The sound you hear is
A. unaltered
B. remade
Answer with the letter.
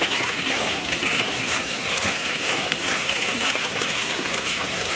B